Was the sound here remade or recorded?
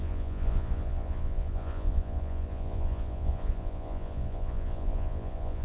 remade